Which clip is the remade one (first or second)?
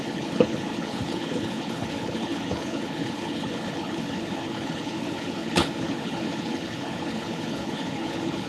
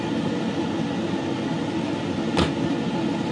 first